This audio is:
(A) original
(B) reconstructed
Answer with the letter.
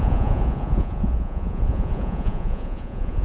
B